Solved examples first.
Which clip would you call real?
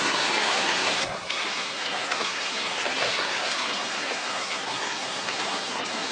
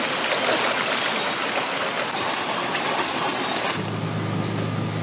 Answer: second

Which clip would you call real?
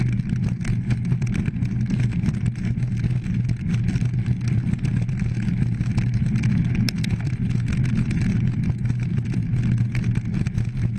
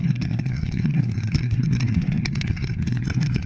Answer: first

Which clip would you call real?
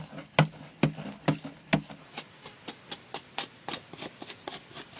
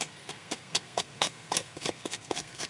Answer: first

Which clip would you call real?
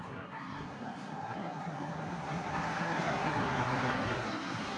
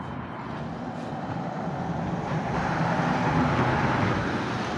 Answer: second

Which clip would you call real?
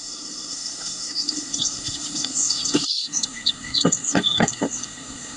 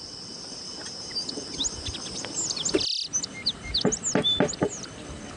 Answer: second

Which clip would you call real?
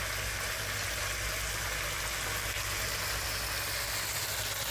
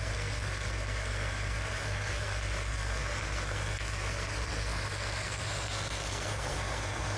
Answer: first